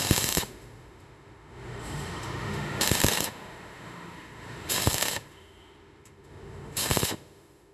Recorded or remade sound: remade